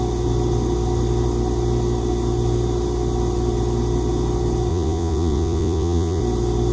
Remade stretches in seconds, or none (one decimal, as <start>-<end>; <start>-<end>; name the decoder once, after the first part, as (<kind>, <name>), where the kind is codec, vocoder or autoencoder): 4.7-6.2 (vocoder, Vocos)

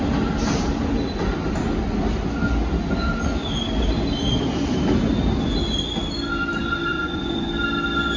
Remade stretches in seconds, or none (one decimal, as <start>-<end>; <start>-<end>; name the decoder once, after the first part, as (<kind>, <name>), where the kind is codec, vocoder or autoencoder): 6.9-7.5 (vocoder, Vocos)